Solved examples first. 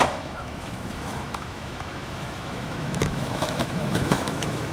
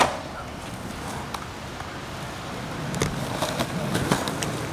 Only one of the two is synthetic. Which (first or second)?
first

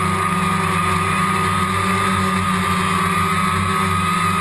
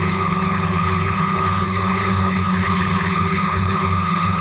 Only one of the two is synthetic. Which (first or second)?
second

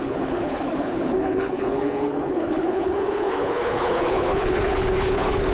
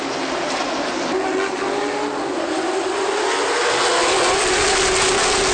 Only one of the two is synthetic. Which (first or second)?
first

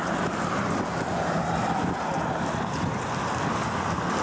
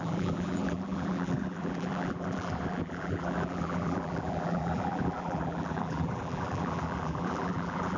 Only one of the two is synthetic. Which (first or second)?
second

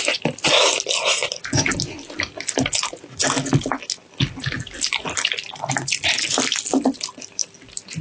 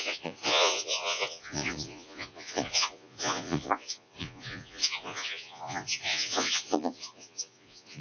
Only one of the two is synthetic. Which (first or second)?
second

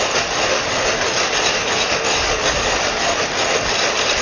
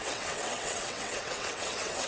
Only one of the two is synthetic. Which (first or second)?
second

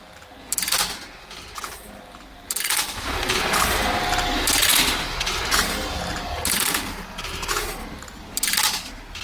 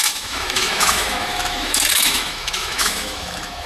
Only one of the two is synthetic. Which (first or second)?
second